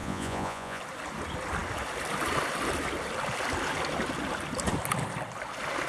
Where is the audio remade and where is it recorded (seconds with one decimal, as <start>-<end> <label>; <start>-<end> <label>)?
0.0-0.8 remade; 0.8-5.9 recorded